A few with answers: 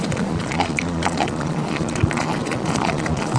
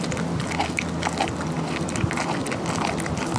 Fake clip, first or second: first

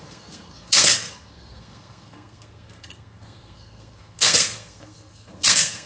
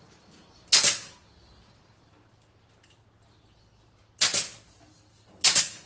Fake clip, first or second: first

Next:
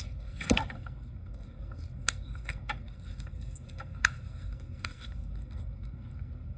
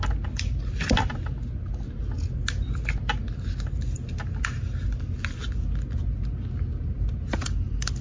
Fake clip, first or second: first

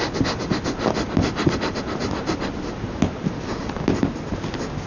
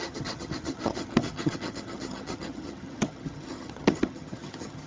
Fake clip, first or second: second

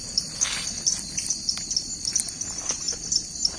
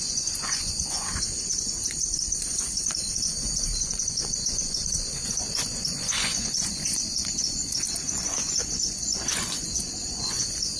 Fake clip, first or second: second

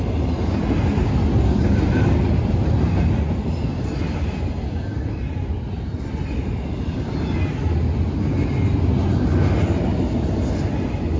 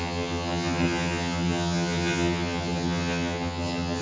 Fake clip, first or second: second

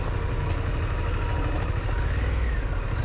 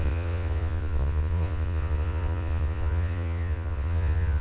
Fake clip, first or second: second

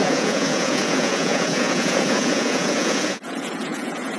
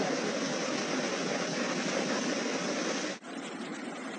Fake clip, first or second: first